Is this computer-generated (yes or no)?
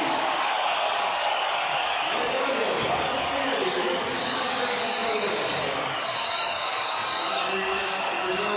yes